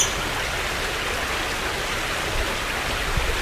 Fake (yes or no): no